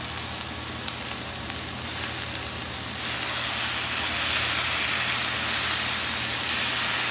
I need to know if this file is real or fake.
real